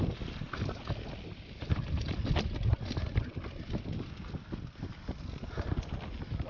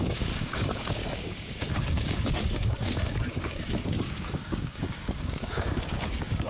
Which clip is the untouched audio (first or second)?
first